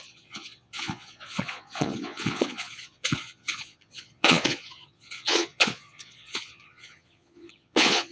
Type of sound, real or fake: fake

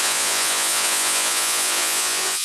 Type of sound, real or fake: fake